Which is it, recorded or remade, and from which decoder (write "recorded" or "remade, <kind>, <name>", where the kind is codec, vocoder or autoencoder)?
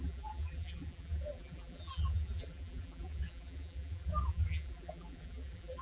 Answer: remade, vocoder, BigVGAN v2